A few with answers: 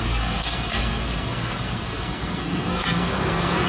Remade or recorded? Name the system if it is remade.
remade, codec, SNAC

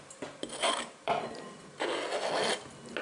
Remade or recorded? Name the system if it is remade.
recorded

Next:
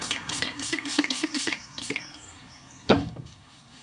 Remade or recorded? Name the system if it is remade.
remade, codec, SNAC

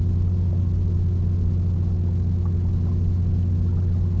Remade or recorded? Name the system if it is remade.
recorded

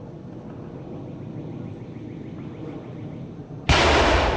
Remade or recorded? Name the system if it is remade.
recorded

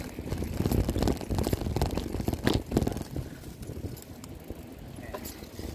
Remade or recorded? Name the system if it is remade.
recorded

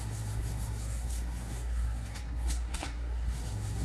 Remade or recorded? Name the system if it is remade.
remade, codec, SNAC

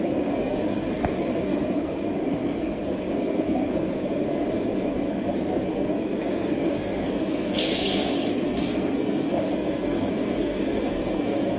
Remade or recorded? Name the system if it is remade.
remade, codec, SNAC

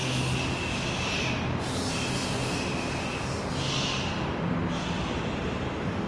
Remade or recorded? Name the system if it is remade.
recorded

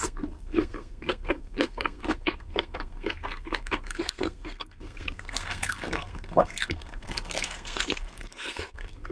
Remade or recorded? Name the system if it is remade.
remade, codec, SNAC